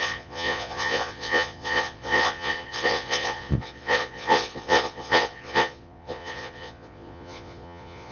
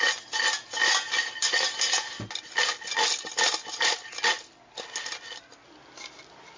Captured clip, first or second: second